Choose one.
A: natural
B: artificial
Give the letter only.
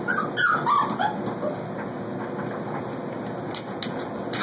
A